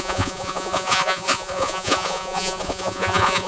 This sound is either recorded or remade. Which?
remade